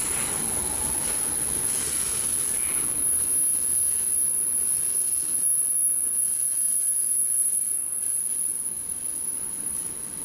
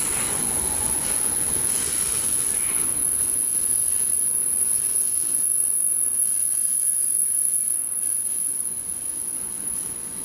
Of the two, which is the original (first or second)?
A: first